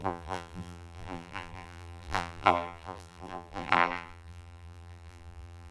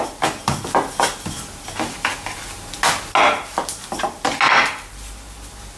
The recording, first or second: second